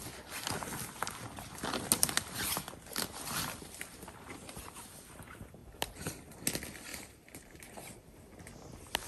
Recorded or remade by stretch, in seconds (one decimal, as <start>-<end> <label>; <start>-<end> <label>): 0.0-5.6 recorded; 5.6-6.1 remade; 6.1-6.9 recorded; 6.9-7.6 remade; 7.6-9.1 recorded